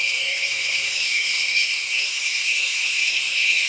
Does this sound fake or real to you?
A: fake